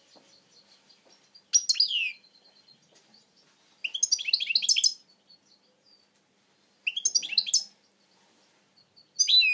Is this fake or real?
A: real